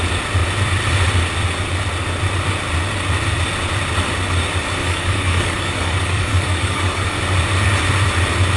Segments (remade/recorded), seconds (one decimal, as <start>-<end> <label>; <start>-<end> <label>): 0.0-4.8 recorded; 4.8-7.2 remade; 7.2-8.6 recorded